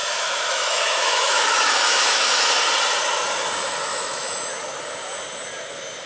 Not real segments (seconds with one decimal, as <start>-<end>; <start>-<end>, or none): 0.0-2.5; 3.9-4.5